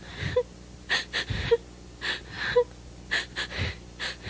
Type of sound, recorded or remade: recorded